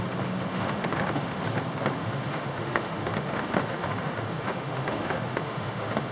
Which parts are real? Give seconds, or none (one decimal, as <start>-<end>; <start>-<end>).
0.0-0.5; 1.4-2.0